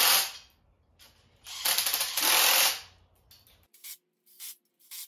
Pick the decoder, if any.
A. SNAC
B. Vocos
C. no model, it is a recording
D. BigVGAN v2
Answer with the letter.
C